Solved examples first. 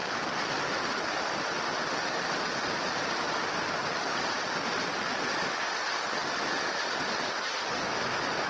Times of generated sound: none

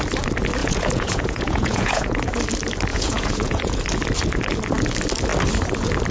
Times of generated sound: 0.6-2.4 (vocoder, Vocos); 2.9-3.8

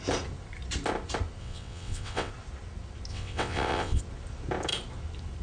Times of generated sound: 1.4-2.3 (vocoder, WaveNeXt); 3.1-4.0

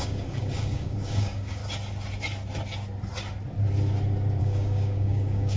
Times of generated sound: 0.0-1.6 (codec, DAC); 4.4-5.6

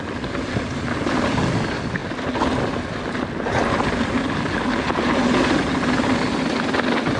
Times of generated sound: none

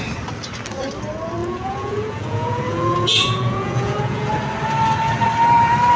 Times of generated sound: 1.4-4.3 (vocoder, Vocos)

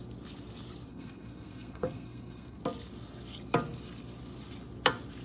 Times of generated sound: 0.9-2.6 (codec, SNAC)

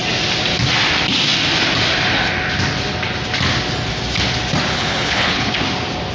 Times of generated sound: 4.7-5.5 (codec, HILCodec)